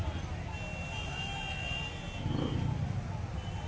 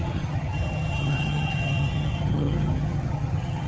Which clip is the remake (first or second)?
second